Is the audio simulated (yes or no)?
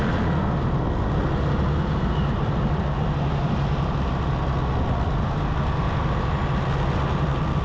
no